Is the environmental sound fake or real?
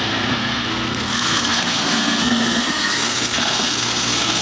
fake